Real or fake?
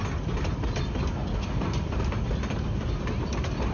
real